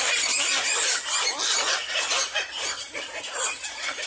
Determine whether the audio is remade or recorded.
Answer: recorded